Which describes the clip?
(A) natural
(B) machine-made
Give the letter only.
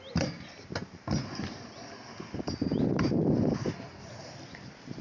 A